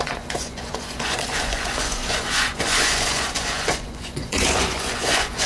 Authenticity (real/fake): fake